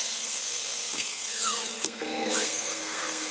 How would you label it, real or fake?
fake